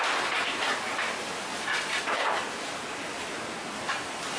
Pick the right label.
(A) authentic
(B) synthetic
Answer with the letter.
B